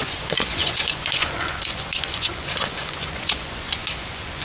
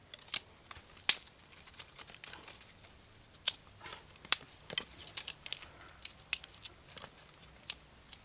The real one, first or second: second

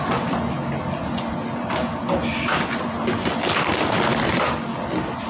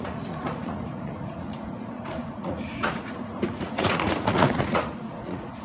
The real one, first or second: first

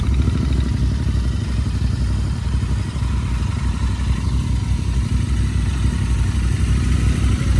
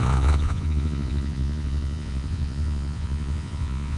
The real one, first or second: first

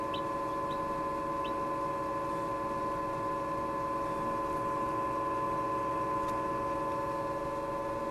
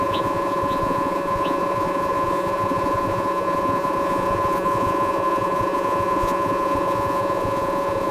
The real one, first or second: first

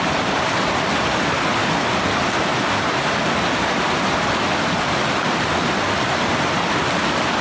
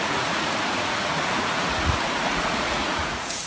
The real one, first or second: first